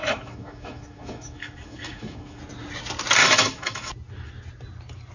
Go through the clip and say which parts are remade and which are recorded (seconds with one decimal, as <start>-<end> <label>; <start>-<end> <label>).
0.0-2.4 remade; 2.4-3.2 recorded; 3.2-3.9 remade; 3.9-5.1 recorded